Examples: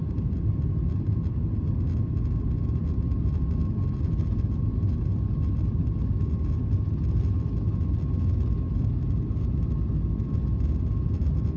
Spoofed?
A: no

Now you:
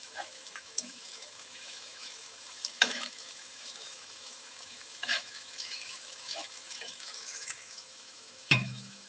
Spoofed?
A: yes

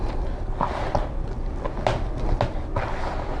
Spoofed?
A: no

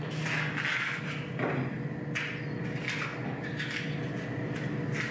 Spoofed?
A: no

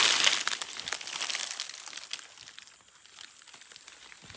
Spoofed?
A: no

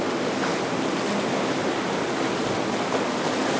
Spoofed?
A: no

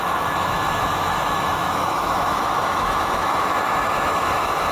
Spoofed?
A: yes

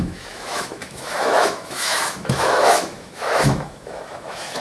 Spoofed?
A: yes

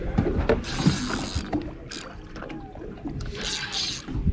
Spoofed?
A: no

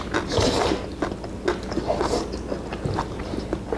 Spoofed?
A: no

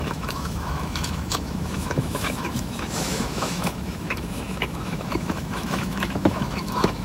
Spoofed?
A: yes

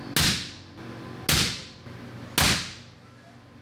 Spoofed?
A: no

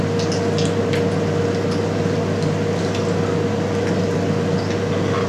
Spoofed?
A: no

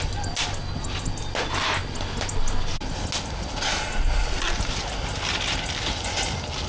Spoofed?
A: no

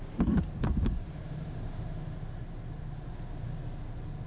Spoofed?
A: no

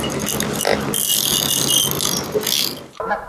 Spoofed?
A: no